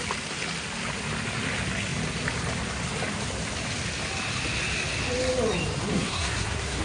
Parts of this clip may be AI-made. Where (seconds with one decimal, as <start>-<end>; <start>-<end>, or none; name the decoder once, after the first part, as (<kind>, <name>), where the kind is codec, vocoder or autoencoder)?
5.9-6.8 (codec, SNAC)